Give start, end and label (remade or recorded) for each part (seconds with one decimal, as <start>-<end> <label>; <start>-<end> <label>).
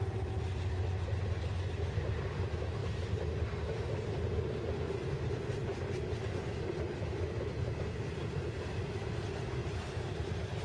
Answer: 0.0-9.6 recorded; 9.6-10.6 remade